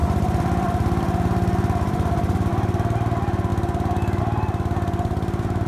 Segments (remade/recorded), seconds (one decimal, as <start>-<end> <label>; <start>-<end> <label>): 0.0-2.5 remade; 2.5-5.7 recorded

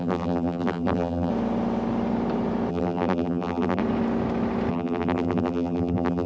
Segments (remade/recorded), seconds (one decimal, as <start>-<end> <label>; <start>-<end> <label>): 0.0-1.3 remade; 1.3-2.7 recorded; 2.7-3.8 remade; 3.8-4.7 recorded; 4.7-6.3 remade

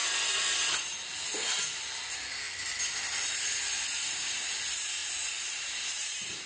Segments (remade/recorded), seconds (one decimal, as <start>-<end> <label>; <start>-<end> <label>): 0.0-3.9 recorded; 3.9-6.5 remade

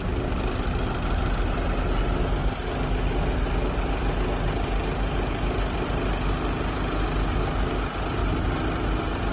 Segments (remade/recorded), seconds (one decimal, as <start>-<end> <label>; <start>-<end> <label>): 0.0-9.3 recorded

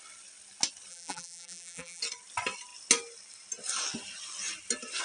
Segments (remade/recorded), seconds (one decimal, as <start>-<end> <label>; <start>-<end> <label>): 0.0-0.9 recorded; 0.9-2.0 remade; 2.0-5.0 recorded

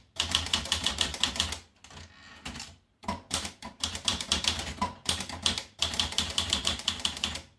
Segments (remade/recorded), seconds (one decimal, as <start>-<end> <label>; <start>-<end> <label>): 0.0-1.1 remade; 1.1-2.3 recorded; 2.3-7.6 remade